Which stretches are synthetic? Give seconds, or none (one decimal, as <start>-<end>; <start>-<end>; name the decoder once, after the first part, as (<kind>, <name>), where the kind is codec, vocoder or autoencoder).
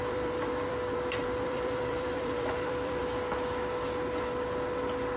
0.0-3.0 (vocoder, BigVGAN v2)